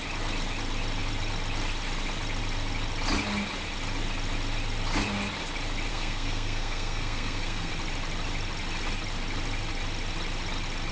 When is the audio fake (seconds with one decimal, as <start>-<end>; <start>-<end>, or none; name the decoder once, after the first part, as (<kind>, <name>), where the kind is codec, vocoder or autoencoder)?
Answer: 5.9-7.7 (codec, SNAC)